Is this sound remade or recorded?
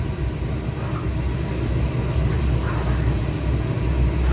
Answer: recorded